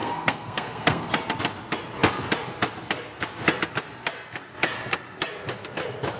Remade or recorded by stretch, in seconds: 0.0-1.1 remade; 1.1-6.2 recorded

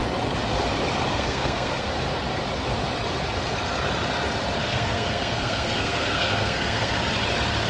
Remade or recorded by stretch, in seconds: 0.0-1.1 recorded; 1.1-1.9 remade; 1.9-4.6 recorded; 4.6-6.9 remade; 6.9-7.7 recorded

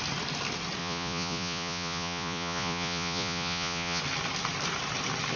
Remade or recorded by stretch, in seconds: 0.0-0.8 recorded; 0.8-4.0 remade; 4.0-5.4 recorded

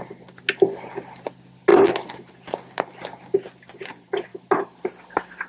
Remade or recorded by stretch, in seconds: 0.0-5.5 recorded

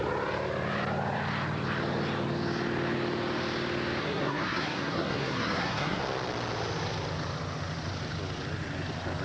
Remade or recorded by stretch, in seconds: 0.0-4.0 recorded; 4.0-6.0 remade; 6.0-9.2 recorded

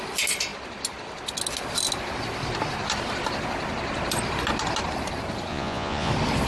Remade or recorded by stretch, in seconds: 0.0-5.5 recorded; 5.5-6.1 remade; 6.1-6.5 recorded

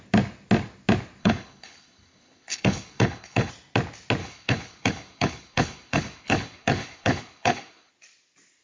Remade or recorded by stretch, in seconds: 0.0-1.2 recorded; 1.2-3.5 remade; 3.5-4.2 recorded; 4.2-7.9 remade; 7.9-8.6 recorded

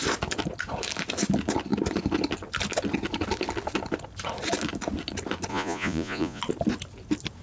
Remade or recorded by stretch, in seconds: 0.0-5.5 recorded; 5.5-6.4 remade; 6.4-7.4 recorded